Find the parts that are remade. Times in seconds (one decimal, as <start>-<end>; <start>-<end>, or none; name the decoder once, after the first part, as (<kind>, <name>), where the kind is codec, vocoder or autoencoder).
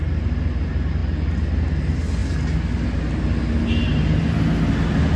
none